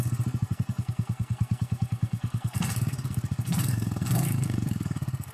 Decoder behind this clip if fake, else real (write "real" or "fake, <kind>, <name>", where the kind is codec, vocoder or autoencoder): fake, codec, SNAC